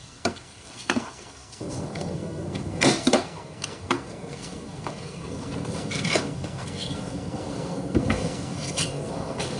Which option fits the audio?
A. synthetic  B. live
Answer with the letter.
A